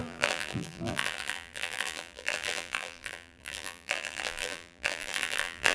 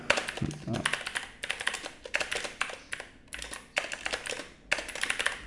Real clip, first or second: second